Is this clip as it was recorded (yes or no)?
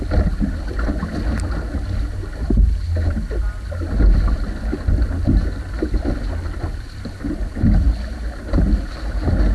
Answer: yes